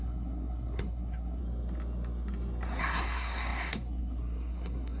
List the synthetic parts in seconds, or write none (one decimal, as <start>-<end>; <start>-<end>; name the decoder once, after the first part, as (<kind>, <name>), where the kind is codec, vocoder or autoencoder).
0.0-1.4 (codec, SNAC); 2.8-5.0

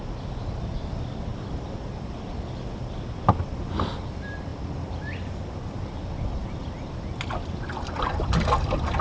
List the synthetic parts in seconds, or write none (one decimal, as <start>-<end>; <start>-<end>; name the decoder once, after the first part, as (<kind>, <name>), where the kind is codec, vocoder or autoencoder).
none

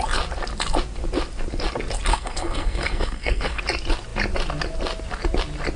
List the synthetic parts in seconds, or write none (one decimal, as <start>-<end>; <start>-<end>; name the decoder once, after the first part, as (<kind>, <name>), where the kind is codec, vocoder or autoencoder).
2.1-3.6 (codec, SNAC)

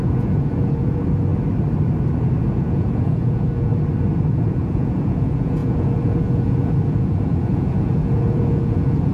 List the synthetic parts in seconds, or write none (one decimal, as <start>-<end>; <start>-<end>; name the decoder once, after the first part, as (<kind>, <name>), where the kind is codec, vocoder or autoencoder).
0.0-1.3 (vocoder, Vocos); 2.5-3.7; 4.2-9.1

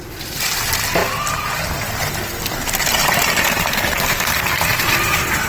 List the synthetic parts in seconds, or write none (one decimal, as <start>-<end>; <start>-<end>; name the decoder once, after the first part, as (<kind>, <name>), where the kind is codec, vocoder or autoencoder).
3.9-4.6 (codec, SNAC)

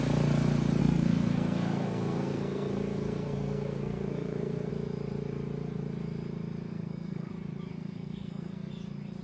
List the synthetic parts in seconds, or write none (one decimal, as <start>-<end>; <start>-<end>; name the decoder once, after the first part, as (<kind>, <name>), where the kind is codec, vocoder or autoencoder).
0.8-4.7 (codec, SNAC); 6.7-7.3; 7.7-8.7

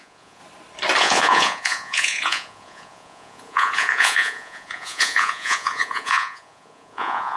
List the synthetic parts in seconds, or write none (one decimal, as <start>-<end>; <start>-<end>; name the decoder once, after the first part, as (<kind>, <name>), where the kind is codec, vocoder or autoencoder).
0.0-0.4 (vocoder, Vocos); 1.0-7.4